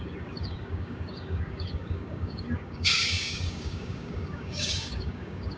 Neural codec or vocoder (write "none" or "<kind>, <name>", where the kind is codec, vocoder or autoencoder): codec, DAC